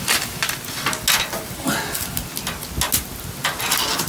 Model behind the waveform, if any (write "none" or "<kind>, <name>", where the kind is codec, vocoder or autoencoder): none